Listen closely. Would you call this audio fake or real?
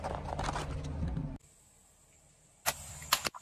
real